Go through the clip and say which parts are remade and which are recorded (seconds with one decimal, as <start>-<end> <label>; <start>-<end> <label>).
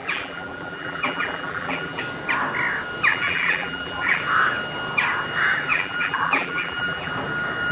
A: 0.0-2.0 remade; 2.0-3.1 recorded; 3.1-4.2 remade; 4.2-5.7 recorded; 5.7-7.1 remade; 7.1-7.7 recorded